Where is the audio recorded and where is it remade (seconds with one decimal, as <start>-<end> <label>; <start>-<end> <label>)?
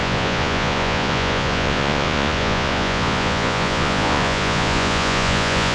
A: 0.0-5.7 remade